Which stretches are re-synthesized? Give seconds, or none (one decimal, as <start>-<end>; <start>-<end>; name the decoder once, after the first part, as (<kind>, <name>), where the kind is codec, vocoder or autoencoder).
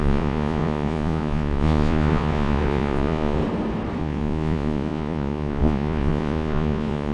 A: 0.0-3.4 (vocoder, Vocos); 4.0-7.1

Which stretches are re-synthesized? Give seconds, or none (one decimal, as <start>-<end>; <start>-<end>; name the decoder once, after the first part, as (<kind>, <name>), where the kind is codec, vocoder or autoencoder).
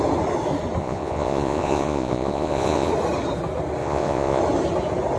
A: 0.8-2.9 (vocoder, Vocos); 3.8-4.4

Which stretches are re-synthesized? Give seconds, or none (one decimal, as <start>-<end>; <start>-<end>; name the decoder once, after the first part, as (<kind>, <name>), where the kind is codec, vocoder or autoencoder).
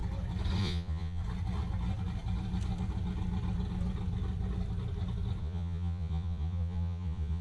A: 0.6-1.2 (vocoder, Vocos); 5.4-7.4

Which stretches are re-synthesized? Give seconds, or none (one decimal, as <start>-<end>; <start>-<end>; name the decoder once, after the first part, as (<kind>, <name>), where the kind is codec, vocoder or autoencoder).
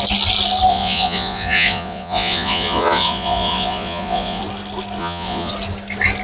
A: 0.7-4.4 (vocoder, Vocos); 5.0-5.5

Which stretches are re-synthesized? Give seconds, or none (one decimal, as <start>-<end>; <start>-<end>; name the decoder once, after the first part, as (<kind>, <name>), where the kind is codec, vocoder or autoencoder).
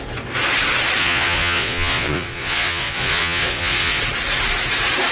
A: 1.0-4.0 (vocoder, Vocos)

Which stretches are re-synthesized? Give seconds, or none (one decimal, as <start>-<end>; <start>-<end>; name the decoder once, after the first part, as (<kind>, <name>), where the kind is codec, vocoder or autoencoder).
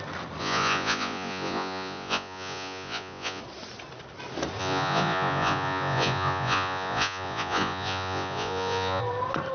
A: 0.4-3.4 (vocoder, Vocos); 4.6-9.0